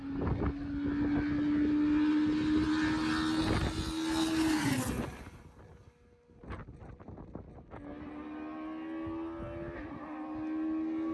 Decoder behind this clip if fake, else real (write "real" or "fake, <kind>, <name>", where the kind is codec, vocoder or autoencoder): real